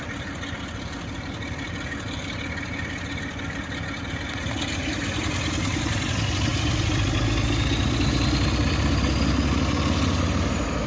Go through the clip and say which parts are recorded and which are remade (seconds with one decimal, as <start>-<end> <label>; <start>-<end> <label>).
0.0-10.9 recorded